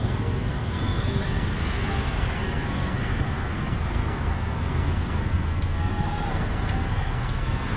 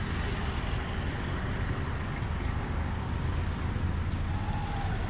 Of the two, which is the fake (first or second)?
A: first